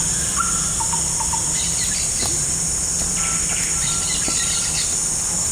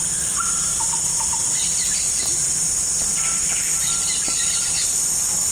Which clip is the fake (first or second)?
second